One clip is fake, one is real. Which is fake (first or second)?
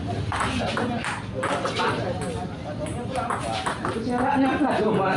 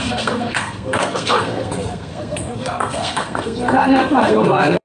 second